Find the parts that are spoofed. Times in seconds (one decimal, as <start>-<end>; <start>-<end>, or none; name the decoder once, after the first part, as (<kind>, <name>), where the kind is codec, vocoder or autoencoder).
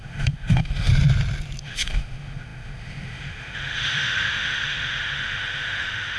0.0-0.9 (autoencoder, DAC-VAE); 1.6-6.2